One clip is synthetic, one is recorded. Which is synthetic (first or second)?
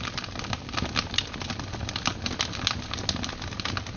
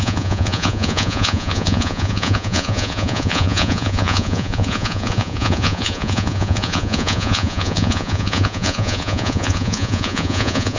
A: second